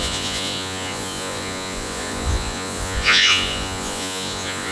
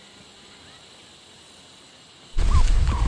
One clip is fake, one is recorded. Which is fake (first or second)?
first